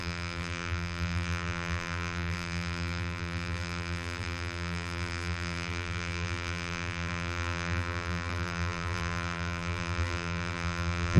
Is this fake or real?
fake